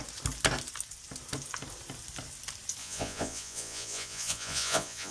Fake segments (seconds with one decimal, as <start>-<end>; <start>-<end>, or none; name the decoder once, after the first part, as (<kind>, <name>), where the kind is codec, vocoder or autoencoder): 2.8-5.1 (vocoder, Vocos)